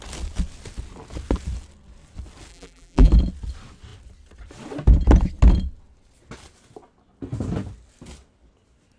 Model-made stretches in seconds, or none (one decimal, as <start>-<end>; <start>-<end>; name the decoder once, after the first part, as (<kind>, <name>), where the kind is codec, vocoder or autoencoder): 2.5-3.1 (vocoder, BigVGAN v2)